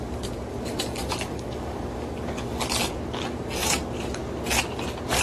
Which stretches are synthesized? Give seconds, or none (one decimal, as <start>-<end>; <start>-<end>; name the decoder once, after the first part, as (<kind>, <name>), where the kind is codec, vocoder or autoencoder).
0.5-2.6 (codec, DAC)